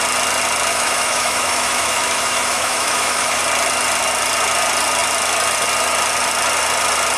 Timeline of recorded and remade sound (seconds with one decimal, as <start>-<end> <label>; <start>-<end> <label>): 0.0-0.7 recorded; 0.7-3.4 remade; 3.4-7.2 recorded